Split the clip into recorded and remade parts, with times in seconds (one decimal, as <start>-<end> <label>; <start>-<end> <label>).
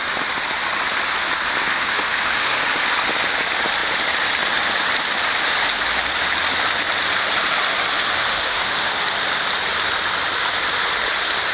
0.0-1.7 recorded; 1.7-2.6 remade; 2.6-8.3 recorded; 8.3-9.0 remade; 9.0-11.5 recorded